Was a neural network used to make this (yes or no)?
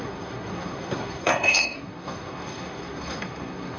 yes